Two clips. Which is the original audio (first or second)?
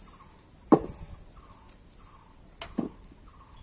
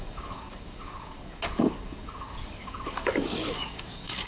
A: first